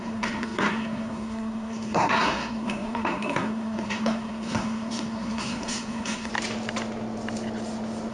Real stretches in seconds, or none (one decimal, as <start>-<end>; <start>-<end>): 6.3-8.1